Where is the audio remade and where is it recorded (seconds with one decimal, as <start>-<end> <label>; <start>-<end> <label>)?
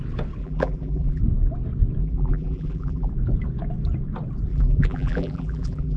0.0-0.4 recorded; 0.4-1.2 remade; 1.2-2.0 recorded; 2.0-3.1 remade; 3.1-4.5 recorded; 4.5-6.0 remade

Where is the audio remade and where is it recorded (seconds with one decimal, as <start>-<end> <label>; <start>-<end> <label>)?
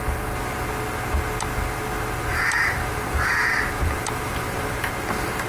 0.0-2.3 recorded; 2.3-4.9 remade; 4.9-5.5 recorded